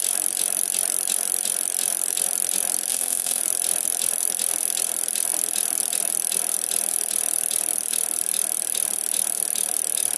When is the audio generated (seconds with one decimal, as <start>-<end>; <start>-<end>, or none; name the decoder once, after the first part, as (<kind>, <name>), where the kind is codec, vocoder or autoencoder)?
2.9-3.4 (autoencoder, DAC-VAE)